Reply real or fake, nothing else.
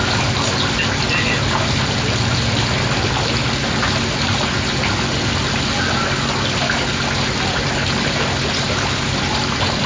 real